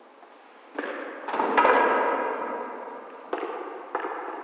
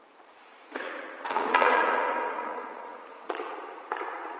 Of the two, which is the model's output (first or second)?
second